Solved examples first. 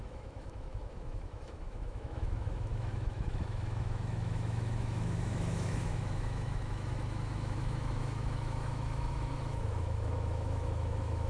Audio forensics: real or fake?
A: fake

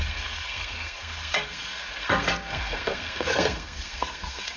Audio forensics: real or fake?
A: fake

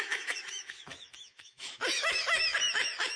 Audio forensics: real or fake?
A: fake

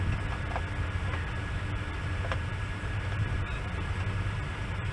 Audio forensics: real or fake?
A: real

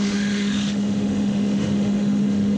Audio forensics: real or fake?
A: fake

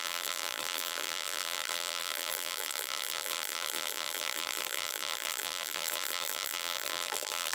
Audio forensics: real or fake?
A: fake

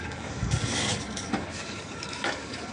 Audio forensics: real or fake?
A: fake